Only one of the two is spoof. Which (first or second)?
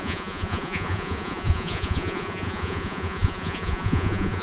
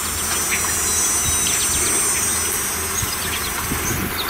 first